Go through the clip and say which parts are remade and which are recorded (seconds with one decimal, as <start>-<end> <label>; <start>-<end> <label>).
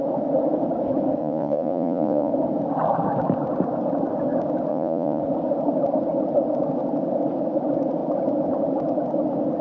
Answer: 0.0-1.2 recorded; 1.2-2.3 remade; 2.3-4.7 recorded; 4.7-5.2 remade; 5.2-9.6 recorded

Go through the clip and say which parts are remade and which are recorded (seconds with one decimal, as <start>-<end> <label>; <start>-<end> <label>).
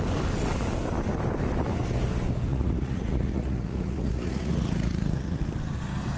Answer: 0.0-2.5 recorded; 2.5-5.4 remade; 5.4-6.2 recorded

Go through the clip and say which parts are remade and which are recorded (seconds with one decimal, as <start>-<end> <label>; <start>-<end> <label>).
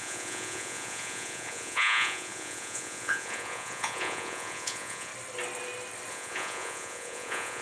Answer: 0.0-5.1 remade; 5.1-6.1 recorded; 6.1-7.6 remade